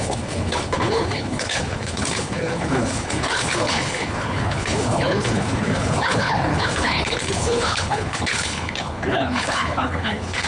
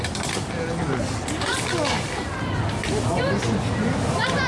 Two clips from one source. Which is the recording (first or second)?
second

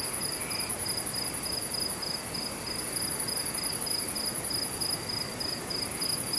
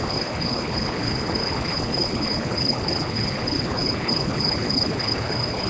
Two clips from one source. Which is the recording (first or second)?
first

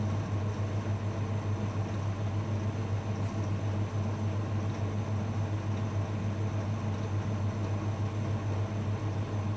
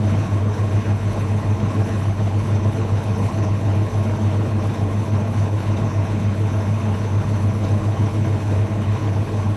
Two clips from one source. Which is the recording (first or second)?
first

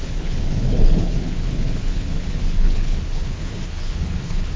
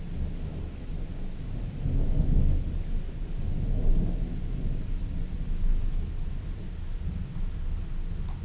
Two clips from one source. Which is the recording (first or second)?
second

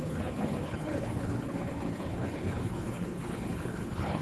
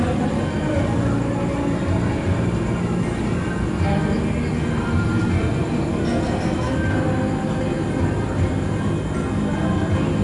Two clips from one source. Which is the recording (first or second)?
second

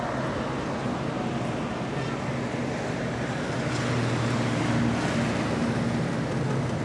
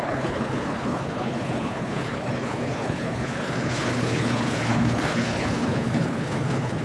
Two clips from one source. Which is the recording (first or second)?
first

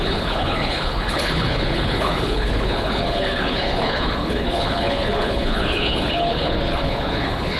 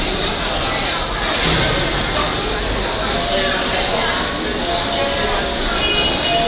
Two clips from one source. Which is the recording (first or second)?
second